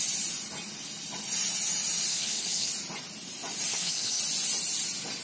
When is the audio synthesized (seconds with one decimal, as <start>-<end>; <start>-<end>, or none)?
2.1-2.7; 3.7-4.2